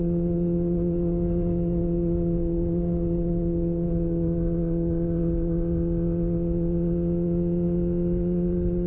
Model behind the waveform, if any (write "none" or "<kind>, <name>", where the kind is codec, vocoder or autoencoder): none